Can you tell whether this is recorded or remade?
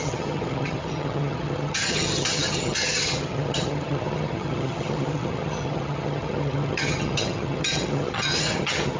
remade